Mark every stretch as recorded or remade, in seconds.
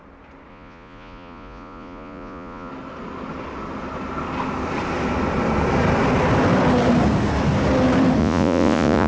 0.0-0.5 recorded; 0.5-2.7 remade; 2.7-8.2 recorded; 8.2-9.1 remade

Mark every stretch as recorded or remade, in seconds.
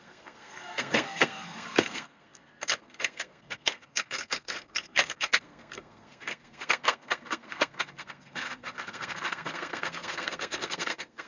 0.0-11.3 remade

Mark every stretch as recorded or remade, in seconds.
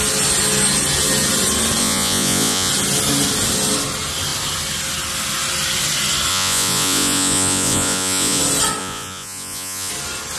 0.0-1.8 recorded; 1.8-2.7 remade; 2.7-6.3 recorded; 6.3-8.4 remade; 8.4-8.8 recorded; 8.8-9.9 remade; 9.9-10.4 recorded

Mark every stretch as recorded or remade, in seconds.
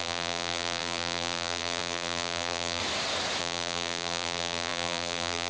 0.0-2.8 remade; 2.8-3.4 recorded; 3.4-5.5 remade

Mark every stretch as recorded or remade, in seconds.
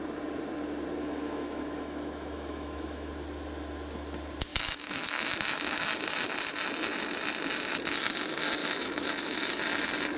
0.0-1.0 recorded; 1.0-3.1 remade; 3.1-4.5 recorded; 4.5-5.8 remade; 5.8-8.6 recorded; 8.6-9.5 remade; 9.5-10.2 recorded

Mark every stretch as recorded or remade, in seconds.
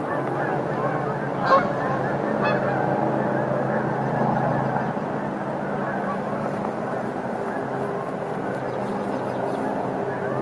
0.0-10.4 recorded